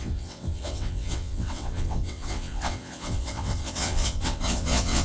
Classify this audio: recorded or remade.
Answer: remade